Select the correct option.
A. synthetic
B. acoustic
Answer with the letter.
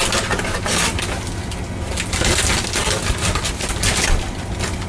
B